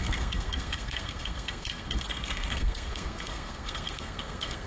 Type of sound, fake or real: fake